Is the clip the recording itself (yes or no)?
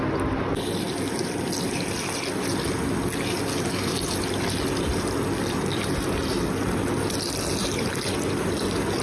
yes